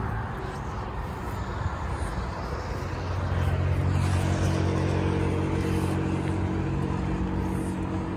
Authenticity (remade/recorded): recorded